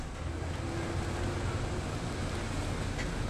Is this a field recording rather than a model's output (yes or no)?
yes